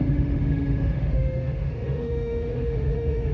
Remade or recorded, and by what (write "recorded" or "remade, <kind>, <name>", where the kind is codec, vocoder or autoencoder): remade, autoencoder, DAC-VAE